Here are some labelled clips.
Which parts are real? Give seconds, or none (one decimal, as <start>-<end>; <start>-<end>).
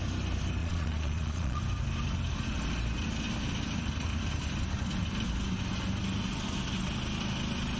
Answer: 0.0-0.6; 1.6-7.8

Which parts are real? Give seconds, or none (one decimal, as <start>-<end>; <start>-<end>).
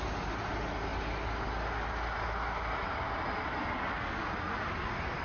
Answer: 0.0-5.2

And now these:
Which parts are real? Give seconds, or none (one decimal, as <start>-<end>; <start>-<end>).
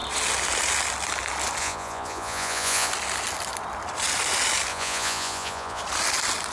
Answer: 0.0-1.6; 2.9-4.7; 5.8-6.5